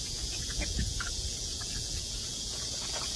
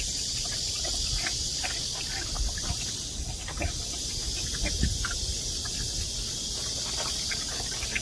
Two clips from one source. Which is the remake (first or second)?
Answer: first